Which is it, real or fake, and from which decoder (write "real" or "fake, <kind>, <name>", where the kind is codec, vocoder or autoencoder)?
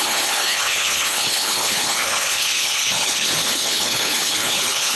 fake, codec, HILCodec